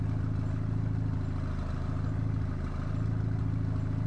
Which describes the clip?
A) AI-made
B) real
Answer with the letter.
B